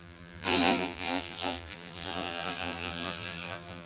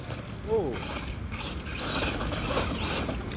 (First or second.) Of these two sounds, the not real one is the first